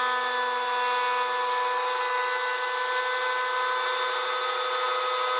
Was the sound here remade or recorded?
recorded